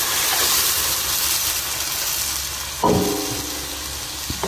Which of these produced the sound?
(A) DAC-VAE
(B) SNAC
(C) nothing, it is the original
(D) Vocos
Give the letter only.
C